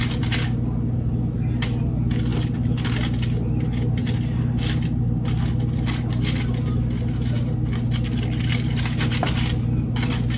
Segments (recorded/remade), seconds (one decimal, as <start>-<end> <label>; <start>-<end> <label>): 0.0-10.4 recorded